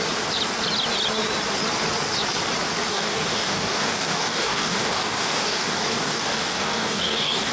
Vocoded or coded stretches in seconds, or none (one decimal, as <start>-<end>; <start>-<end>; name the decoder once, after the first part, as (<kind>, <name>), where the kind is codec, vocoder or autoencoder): 2.9-7.5 (codec, DAC)